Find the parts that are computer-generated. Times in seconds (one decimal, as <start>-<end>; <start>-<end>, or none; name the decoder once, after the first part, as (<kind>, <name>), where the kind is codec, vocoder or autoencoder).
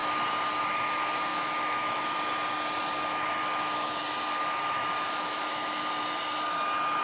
1.3-2.0 (autoencoder, DAC-VAE); 3.4-4.0; 4.4-5.9